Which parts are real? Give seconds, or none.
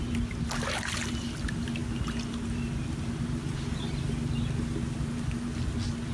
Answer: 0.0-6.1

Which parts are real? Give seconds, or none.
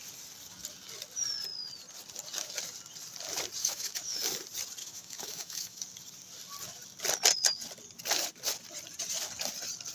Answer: 0.0-3.6; 4.2-4.8; 5.8-9.9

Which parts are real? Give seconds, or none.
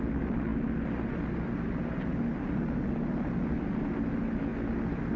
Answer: 0.0-5.2